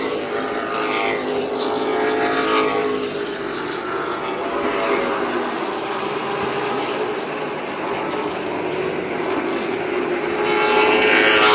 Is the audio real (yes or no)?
yes